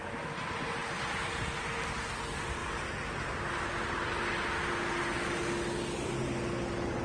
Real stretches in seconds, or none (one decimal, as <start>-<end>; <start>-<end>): 0.0-7.0